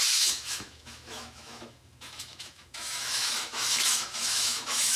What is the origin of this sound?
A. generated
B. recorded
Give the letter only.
A